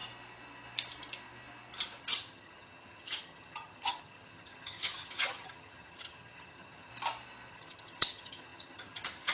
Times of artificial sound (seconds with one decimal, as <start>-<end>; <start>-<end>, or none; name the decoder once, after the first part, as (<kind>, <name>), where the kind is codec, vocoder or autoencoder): 2.0-6.9 (vocoder, HiFi-GAN); 7.5-9.3